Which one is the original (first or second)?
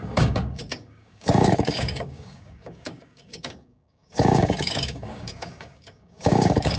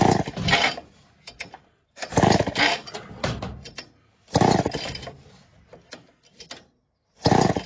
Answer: second